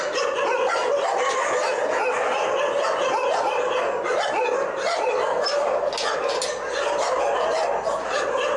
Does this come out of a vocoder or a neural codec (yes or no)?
no